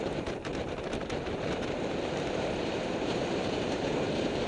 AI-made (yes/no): yes